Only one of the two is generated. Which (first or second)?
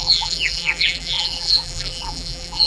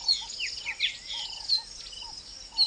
first